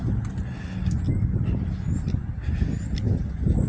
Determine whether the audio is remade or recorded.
recorded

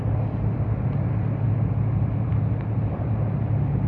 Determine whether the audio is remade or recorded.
remade